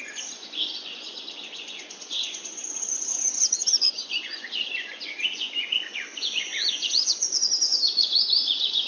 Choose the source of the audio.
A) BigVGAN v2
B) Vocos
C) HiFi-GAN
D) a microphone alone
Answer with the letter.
B